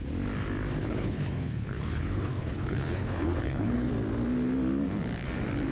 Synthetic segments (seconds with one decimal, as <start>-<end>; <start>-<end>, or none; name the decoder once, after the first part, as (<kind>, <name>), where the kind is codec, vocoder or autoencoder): 0.8-3.9 (codec, HILCodec)